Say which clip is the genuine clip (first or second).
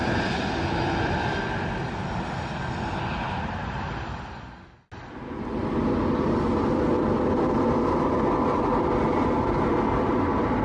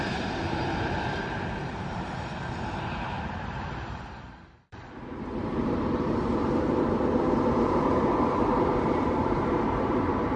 first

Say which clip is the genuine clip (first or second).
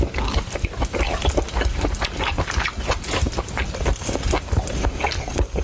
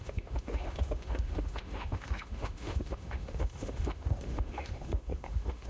first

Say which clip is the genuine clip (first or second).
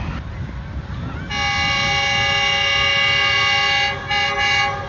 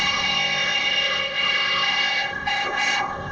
first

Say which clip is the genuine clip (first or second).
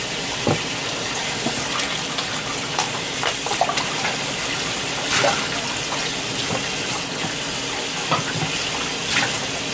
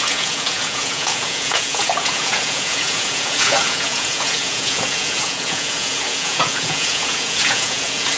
first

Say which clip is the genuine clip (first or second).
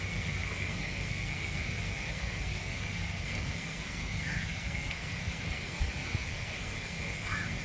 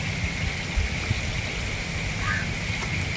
second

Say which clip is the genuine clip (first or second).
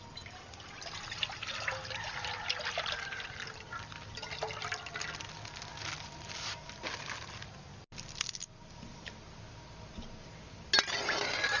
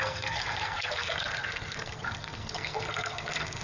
first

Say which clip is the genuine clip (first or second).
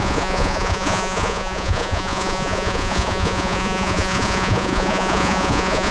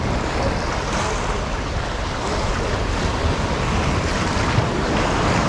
second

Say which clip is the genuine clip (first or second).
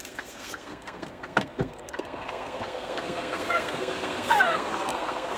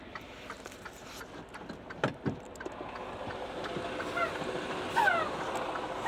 second